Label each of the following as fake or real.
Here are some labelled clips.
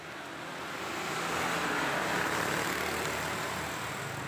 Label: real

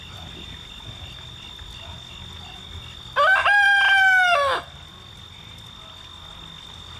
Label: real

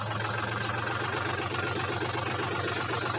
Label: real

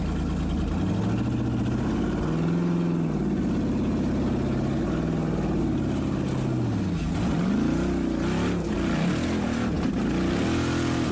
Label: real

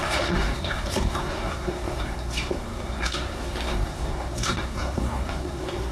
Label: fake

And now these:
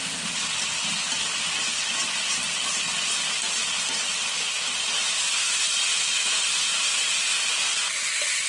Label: real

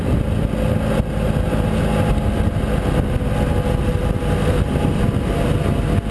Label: real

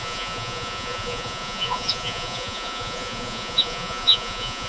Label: fake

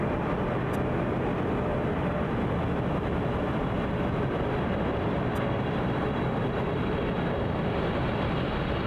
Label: real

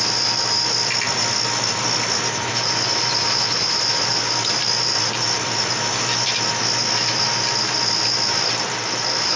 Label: real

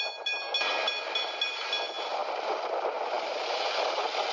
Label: real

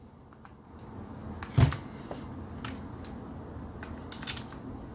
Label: real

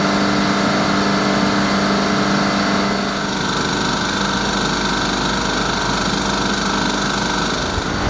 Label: real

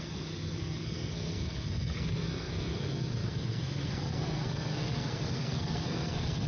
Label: fake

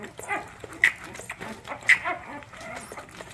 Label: real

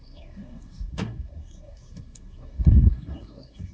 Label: fake